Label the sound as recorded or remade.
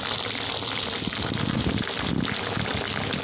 recorded